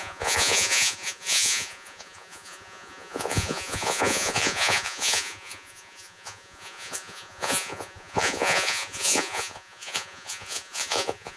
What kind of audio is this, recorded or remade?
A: remade